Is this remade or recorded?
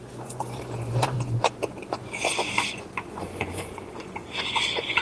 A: remade